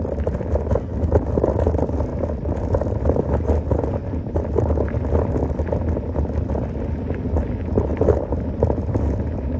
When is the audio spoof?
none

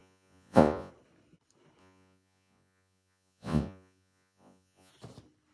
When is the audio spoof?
0.0-0.9 (vocoder, Vocos); 1.8-4.9